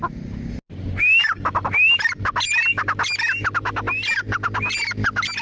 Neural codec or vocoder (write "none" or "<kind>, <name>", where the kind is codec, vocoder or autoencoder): none